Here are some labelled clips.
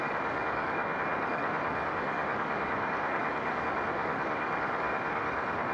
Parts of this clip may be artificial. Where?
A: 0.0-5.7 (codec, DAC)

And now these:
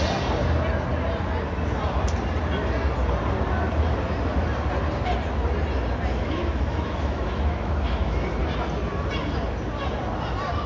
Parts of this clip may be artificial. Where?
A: 6.1-8.4 (autoencoder, DAC-VAE)

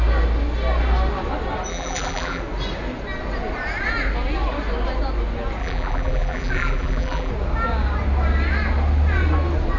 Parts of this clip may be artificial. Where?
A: 1.7-2.4 (vocoder, BigVGAN v2); 5.6-7.3

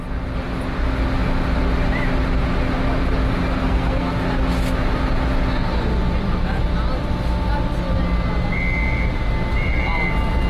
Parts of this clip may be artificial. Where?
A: 3.6-4.2 (codec, SNAC)

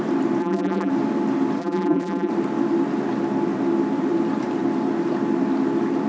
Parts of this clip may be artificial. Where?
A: 0.4-0.9 (vocoder, BigVGAN v2); 1.6-2.3

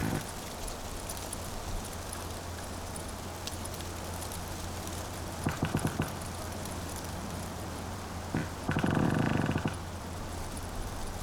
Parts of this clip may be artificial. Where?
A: 5.0-9.3 (vocoder, BigVGAN v2); 10.0-11.2